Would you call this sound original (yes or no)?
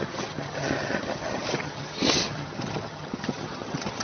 no